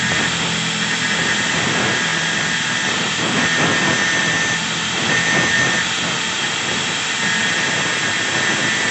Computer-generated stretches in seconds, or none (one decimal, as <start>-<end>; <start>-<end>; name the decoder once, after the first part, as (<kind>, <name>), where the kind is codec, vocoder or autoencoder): none